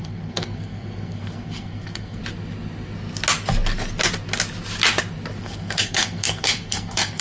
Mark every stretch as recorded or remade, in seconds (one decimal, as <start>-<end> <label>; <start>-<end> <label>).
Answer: 0.0-2.2 remade; 2.2-5.4 recorded; 5.4-7.2 remade